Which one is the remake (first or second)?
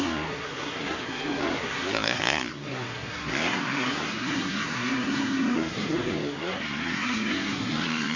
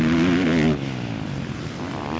first